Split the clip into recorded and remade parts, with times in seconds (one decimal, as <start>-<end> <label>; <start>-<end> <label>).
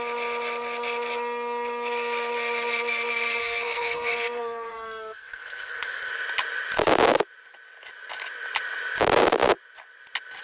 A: 0.0-3.4 recorded; 3.4-6.1 remade; 6.1-10.4 recorded